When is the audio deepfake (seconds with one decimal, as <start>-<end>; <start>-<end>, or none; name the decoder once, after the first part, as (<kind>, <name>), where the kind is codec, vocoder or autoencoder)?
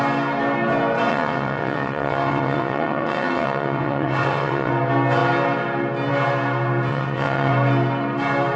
1.1-4.7 (vocoder, WaveNeXt); 6.9-7.5